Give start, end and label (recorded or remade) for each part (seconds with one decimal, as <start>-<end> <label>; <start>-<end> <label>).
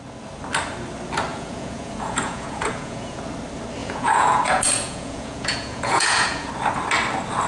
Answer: 0.0-1.3 recorded; 1.3-3.2 remade; 3.2-3.8 recorded; 3.8-6.5 remade; 6.5-7.5 recorded